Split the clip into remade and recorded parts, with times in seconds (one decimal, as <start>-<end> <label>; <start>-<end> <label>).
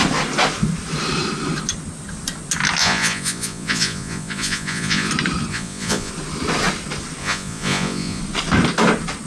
0.0-2.8 recorded; 2.8-5.1 remade; 5.1-5.5 recorded; 5.5-6.1 remade; 6.1-7.2 recorded; 7.2-8.2 remade; 8.2-9.3 recorded